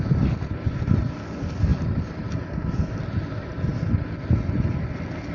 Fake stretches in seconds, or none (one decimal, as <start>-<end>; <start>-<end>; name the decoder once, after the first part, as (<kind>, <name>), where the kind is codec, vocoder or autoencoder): none